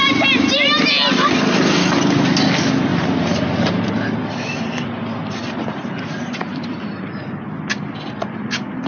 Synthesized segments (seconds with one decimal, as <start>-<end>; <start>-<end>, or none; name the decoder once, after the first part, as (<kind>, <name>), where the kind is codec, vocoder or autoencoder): 2.9-3.9 (vocoder, BigVGAN v2); 5.4-6.9